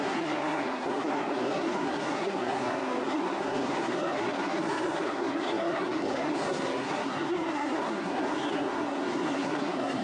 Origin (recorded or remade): remade